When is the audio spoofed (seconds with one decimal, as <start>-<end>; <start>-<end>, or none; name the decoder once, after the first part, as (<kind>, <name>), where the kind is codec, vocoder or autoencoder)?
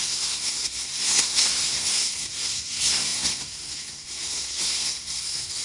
0.0-5.6 (codec, SNAC)